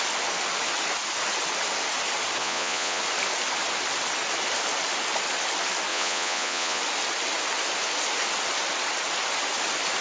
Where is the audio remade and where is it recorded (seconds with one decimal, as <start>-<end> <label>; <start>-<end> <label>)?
0.0-2.4 recorded; 2.4-3.0 remade; 3.0-5.9 recorded; 5.9-6.8 remade; 6.8-10.0 recorded